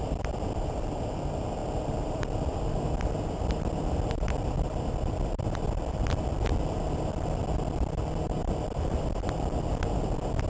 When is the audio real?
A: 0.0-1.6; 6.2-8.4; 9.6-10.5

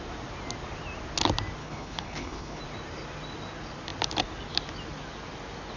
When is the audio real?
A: 0.0-1.6; 2.6-5.8